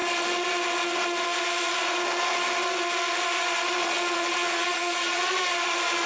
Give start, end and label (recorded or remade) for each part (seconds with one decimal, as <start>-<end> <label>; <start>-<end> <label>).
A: 0.0-3.8 recorded; 3.8-5.4 remade; 5.4-6.1 recorded